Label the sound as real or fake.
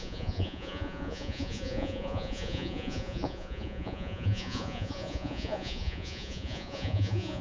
fake